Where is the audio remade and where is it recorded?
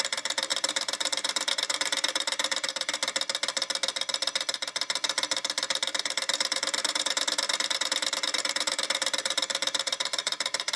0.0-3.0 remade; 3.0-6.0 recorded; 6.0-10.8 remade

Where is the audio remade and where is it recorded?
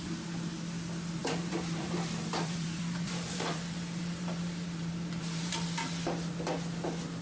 0.0-1.2 recorded; 1.2-5.5 remade; 5.5-7.2 recorded